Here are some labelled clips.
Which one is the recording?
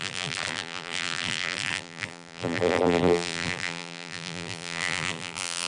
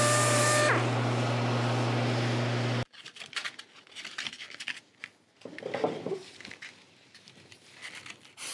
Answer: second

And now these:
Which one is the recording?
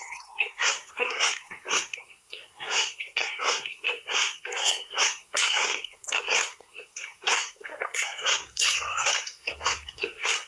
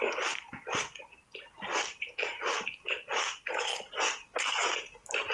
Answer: second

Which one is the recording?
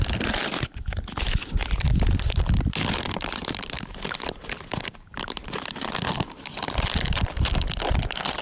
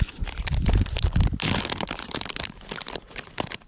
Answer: second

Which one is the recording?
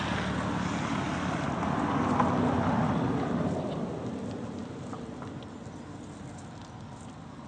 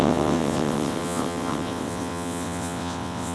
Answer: first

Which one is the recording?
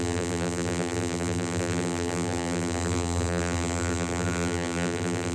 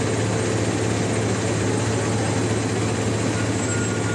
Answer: second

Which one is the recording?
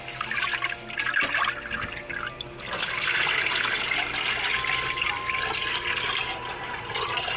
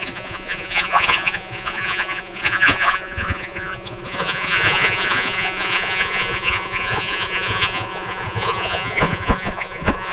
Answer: first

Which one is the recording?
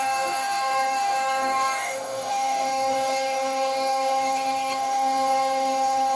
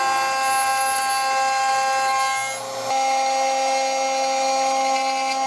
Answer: second